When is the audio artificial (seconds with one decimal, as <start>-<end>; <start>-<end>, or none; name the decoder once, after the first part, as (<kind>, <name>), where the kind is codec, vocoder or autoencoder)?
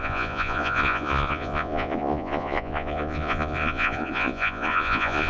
0.0-5.3 (vocoder, Vocos)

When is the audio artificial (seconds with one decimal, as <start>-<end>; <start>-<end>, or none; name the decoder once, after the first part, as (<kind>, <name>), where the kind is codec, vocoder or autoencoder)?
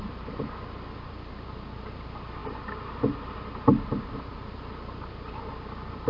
none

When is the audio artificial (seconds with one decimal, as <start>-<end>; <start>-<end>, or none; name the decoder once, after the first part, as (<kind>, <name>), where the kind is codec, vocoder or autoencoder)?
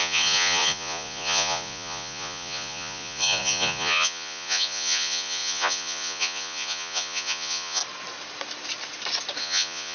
0.0-7.8 (vocoder, Vocos); 9.4-9.9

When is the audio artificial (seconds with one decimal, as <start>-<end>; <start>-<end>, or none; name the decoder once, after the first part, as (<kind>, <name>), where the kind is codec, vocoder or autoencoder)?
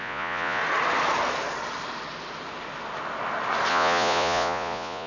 0.0-0.6 (vocoder, Vocos); 3.7-5.1